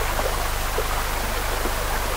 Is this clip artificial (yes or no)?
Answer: no